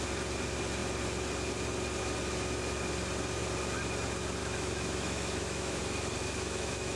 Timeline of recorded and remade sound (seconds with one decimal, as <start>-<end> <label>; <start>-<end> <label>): 0.0-4.4 recorded; 4.4-5.8 remade; 5.8-6.2 recorded; 6.2-7.0 remade